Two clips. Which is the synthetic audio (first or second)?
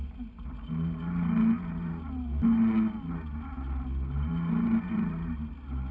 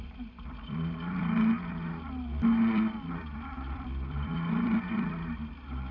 second